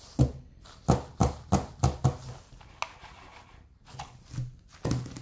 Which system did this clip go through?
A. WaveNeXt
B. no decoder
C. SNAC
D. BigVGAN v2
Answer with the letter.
B